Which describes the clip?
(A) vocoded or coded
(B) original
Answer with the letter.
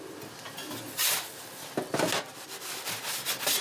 B